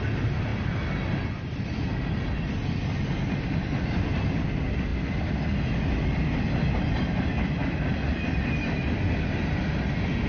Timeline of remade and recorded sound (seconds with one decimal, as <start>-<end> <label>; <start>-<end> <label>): 0.0-10.3 recorded